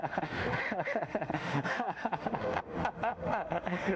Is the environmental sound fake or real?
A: fake